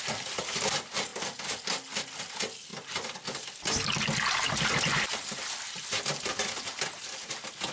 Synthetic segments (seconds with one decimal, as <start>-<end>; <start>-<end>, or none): none